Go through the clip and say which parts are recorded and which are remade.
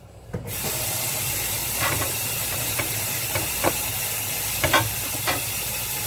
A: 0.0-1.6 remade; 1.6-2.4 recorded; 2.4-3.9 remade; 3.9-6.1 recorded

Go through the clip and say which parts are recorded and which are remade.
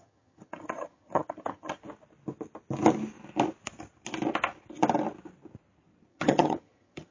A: 0.0-1.8 remade; 1.8-6.1 recorded; 6.1-7.1 remade